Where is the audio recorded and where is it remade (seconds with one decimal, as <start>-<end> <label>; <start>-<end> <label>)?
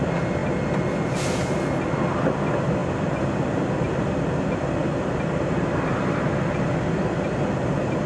0.0-8.1 recorded